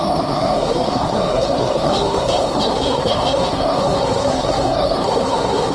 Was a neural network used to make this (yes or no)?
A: yes